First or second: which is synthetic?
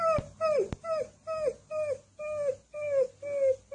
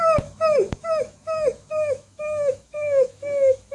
second